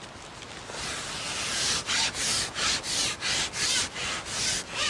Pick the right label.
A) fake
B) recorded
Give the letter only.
B